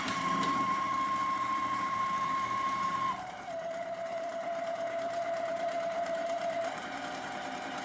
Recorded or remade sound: remade